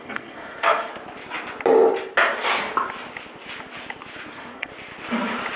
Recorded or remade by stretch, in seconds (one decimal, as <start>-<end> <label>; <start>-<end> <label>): 0.0-0.9 remade; 0.9-4.3 recorded; 4.3-4.7 remade; 4.7-5.6 recorded